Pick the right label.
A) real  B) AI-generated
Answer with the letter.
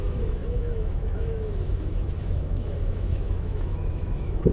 B